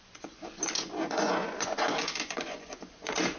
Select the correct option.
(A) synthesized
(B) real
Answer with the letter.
A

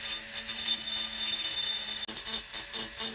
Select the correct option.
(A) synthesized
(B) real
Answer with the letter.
B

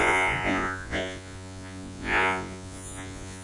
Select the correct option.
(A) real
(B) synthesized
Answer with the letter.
B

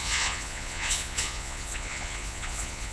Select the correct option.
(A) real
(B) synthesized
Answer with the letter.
B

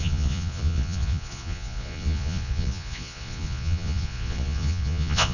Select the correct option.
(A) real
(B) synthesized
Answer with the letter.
B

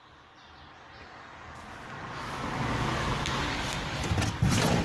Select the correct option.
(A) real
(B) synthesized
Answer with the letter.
A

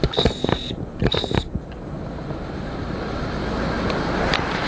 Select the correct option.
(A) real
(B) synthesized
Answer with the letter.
A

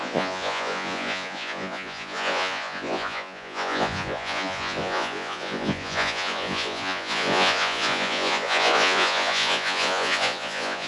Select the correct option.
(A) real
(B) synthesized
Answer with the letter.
B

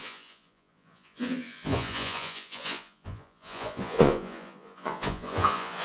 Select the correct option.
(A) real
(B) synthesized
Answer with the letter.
B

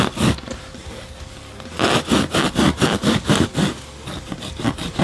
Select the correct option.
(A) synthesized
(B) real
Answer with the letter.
B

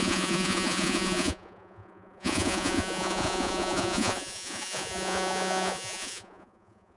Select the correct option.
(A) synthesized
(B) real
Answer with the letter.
A